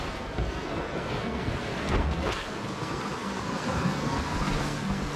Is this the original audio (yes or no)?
no